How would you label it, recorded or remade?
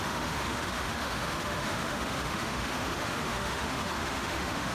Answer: remade